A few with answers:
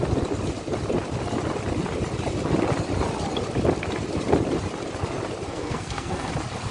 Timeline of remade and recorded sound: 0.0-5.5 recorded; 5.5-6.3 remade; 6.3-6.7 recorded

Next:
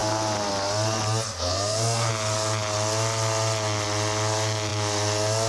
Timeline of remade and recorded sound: 0.0-1.3 recorded; 1.3-2.1 remade; 2.1-5.5 recorded

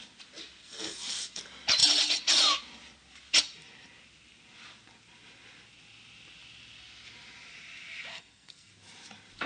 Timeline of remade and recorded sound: 0.0-0.6 recorded; 0.6-1.4 remade; 1.4-8.1 recorded; 8.1-8.7 remade; 8.7-9.5 recorded

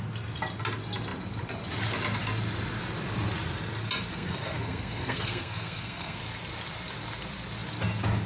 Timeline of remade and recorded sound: 0.0-4.1 recorded; 4.1-6.2 remade; 6.2-8.3 recorded